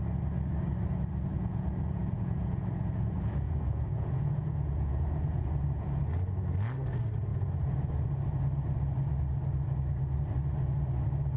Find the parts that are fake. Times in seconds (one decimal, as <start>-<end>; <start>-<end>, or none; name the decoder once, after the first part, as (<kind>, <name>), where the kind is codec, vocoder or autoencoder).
1.3-6.0 (vocoder, Vocos); 7.3-7.9